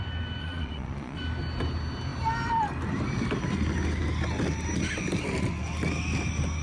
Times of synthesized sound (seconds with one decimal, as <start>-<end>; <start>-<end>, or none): 0.4-1.2